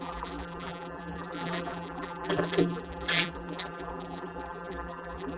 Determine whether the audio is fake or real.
fake